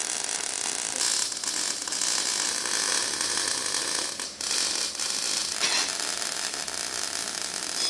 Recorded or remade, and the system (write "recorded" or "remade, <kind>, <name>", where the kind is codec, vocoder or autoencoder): recorded